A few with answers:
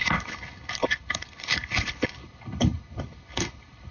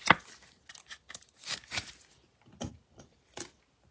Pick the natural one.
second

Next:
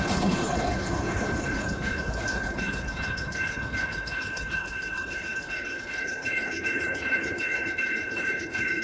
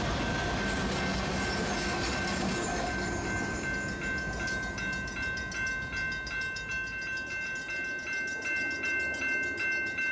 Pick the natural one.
second